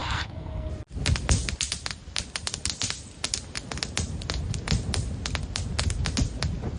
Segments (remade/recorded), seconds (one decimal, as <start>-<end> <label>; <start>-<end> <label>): 0.0-0.7 remade; 0.7-6.8 recorded